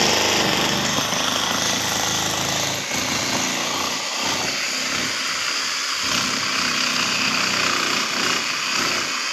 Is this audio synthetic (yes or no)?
no